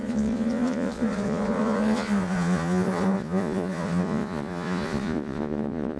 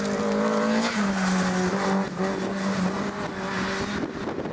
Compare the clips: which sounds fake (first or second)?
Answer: first